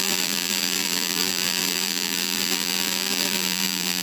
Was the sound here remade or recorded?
remade